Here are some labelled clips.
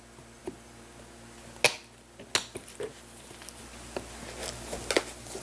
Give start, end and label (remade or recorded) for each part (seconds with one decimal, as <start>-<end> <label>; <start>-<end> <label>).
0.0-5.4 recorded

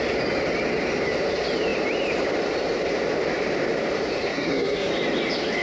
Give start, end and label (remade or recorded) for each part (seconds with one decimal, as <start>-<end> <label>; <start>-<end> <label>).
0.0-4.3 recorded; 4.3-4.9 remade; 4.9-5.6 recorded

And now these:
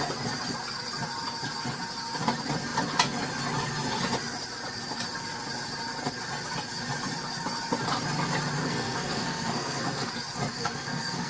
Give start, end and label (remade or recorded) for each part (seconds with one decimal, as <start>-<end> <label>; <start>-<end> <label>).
0.0-8.6 recorded; 8.6-10.1 remade; 10.1-10.5 recorded; 10.5-11.3 remade

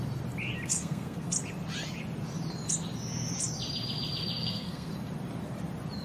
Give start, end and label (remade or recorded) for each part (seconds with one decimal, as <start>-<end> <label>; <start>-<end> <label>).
0.0-0.7 recorded; 0.7-1.3 remade; 1.3-4.4 recorded; 4.4-4.9 remade; 4.9-6.0 recorded

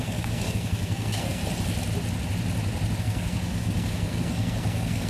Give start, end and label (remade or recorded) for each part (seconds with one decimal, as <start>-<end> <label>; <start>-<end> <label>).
0.0-1.4 remade; 1.4-3.0 recorded; 3.0-5.1 remade